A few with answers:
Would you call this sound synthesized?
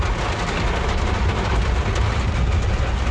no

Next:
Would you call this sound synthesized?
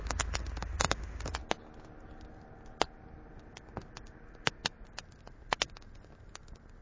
no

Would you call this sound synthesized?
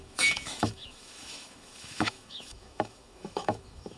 yes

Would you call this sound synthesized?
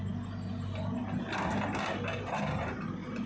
no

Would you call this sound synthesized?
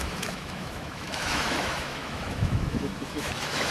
yes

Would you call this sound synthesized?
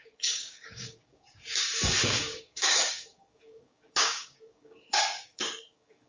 yes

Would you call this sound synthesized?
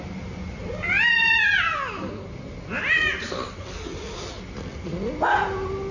no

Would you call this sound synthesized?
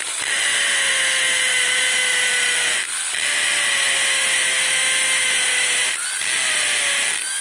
no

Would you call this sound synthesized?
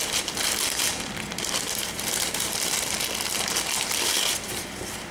no